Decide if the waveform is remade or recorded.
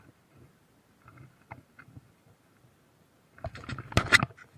recorded